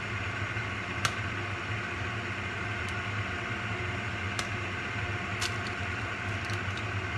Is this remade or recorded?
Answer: recorded